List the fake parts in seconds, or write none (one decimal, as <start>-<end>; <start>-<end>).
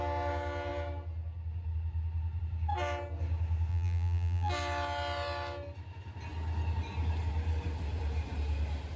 3.7-4.5